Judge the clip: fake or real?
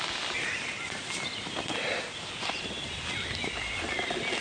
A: real